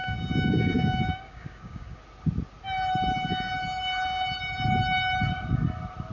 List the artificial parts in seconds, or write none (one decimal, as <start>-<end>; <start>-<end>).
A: 0.0-2.0